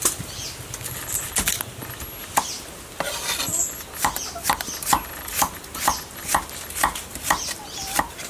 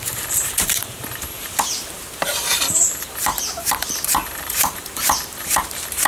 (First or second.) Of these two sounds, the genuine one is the first